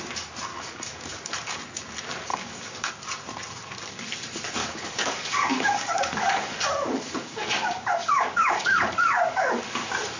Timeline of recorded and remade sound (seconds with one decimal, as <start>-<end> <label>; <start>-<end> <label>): 0.0-0.5 recorded; 0.5-1.6 remade; 1.6-2.3 recorded; 2.3-2.9 remade; 2.9-4.6 recorded; 4.6-9.6 remade; 9.6-10.2 recorded